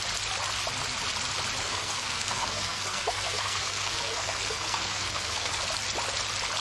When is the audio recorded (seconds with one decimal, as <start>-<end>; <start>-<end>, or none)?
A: 0.0-1.6; 5.6-6.6